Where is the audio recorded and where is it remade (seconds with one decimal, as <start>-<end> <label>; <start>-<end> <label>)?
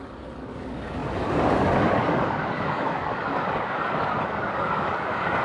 0.0-5.4 remade